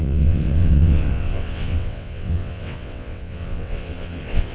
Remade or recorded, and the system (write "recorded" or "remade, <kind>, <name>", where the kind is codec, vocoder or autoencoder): remade, vocoder, WaveNeXt